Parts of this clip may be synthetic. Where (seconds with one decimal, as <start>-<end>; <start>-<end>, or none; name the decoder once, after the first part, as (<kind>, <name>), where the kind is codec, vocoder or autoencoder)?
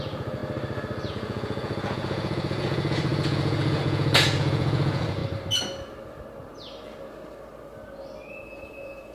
0.0-0.4 (vocoder, Vocos); 1.1-5.2; 8.3-9.1